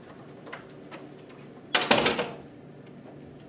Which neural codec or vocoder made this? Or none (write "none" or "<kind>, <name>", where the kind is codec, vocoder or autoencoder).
none